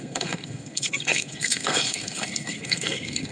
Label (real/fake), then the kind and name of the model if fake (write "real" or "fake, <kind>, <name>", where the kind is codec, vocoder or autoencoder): fake, codec, SNAC